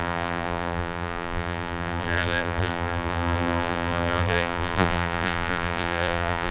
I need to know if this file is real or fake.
fake